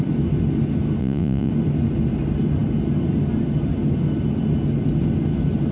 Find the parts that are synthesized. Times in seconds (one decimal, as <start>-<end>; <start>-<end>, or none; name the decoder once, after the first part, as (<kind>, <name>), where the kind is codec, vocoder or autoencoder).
1.0-1.5 (vocoder, Vocos)